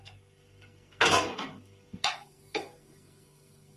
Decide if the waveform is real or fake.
fake